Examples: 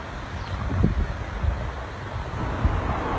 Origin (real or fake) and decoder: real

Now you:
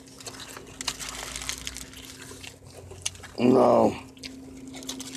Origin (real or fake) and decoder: real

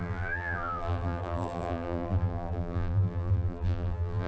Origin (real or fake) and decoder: fake, vocoder, BigVGAN v2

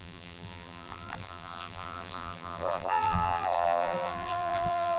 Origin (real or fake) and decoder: fake, vocoder, BigVGAN v2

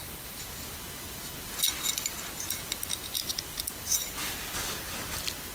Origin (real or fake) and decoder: real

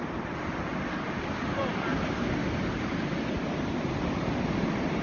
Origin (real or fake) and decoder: real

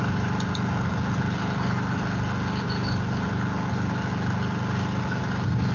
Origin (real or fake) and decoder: real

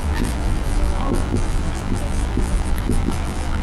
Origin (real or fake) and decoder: fake, vocoder, BigVGAN v2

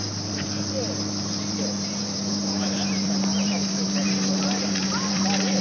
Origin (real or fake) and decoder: fake, vocoder, BigVGAN v2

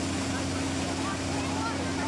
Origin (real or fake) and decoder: real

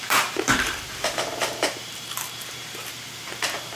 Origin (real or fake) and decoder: fake, vocoder, BigVGAN v2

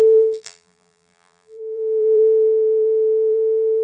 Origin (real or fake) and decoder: fake, vocoder, BigVGAN v2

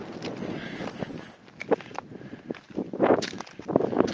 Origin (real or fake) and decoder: real